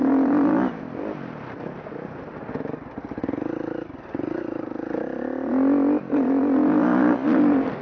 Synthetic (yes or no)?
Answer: no